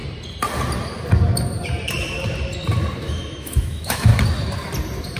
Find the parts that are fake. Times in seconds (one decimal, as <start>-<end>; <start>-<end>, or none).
3.0-4.1